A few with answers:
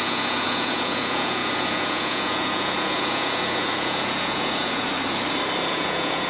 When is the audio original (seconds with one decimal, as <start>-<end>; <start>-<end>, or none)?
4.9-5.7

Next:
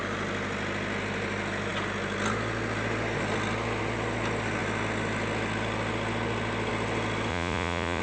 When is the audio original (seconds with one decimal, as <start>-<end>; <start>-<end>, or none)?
0.0-7.3

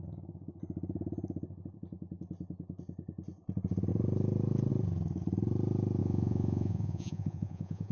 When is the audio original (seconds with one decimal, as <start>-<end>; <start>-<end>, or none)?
0.0-6.0

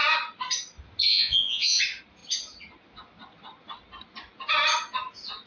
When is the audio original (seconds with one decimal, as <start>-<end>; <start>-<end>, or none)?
0.0-1.1; 1.8-5.5

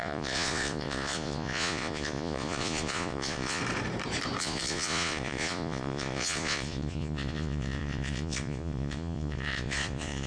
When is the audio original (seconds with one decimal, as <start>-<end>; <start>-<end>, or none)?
3.6-4.4

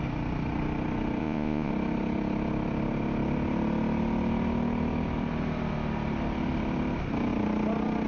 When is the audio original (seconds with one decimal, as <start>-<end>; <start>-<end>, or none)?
0.0-1.2; 1.7-8.1

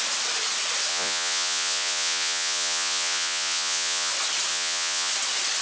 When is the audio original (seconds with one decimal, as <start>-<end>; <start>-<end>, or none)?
0.0-0.9; 4.1-4.5; 5.1-5.6